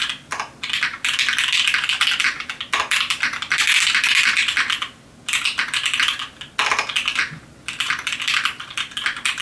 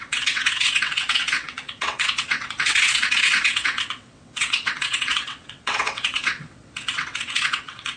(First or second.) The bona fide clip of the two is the first